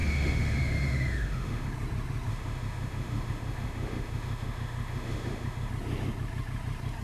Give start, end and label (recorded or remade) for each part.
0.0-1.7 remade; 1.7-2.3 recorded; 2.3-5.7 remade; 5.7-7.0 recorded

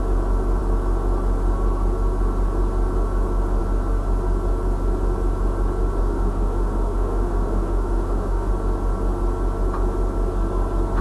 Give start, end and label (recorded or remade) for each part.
0.0-6.0 recorded; 6.0-8.5 remade; 8.5-11.0 recorded